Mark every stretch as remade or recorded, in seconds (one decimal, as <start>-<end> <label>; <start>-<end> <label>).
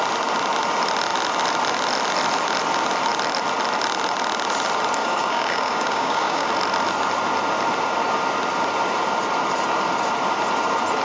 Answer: 0.0-5.0 recorded; 5.0-6.5 remade; 6.5-11.0 recorded